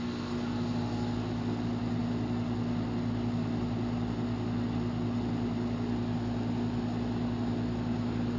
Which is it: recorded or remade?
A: recorded